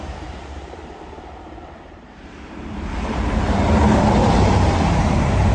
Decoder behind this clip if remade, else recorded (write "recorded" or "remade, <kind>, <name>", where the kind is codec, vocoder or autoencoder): remade, vocoder, BigVGAN v2